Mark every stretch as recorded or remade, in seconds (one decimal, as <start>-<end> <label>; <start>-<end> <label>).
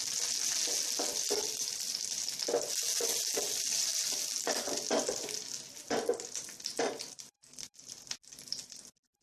0.0-9.2 recorded